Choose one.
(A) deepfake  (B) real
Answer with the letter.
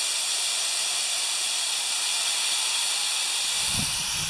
B